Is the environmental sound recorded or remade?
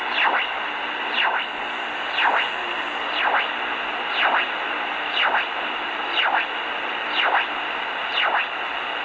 recorded